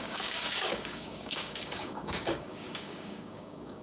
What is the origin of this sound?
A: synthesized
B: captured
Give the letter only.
A